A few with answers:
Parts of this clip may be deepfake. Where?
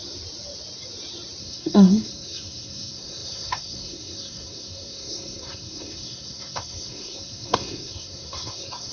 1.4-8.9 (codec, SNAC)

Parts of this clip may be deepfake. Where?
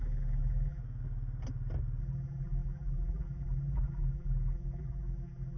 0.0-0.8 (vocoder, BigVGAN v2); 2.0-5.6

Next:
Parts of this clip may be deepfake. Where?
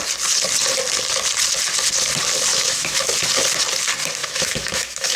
2.5-3.1 (autoencoder, DAC-VAE); 4.2-5.2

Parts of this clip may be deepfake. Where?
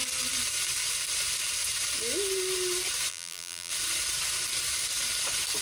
3.1-3.7 (vocoder, BigVGAN v2)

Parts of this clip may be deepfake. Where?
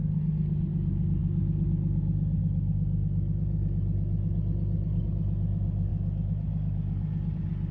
none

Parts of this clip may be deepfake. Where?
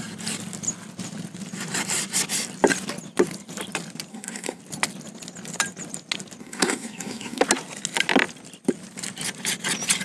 4.1-4.6 (codec, SNAC); 6.4-7.4